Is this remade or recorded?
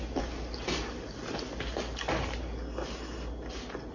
recorded